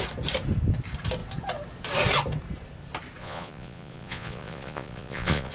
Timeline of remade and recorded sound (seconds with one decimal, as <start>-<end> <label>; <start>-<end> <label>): 0.0-3.2 recorded; 3.2-5.5 remade